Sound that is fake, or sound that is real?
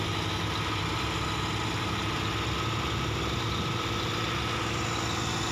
real